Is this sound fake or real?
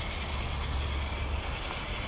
real